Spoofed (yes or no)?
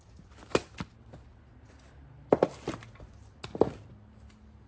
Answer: no